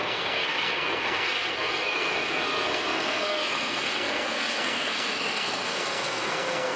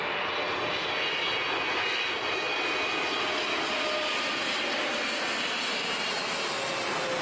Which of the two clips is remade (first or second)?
first